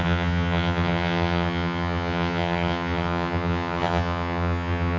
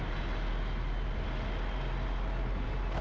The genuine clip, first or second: second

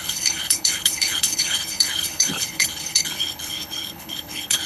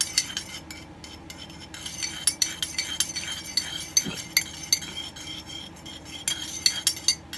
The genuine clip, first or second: second